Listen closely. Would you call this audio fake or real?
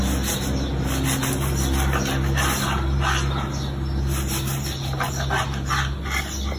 real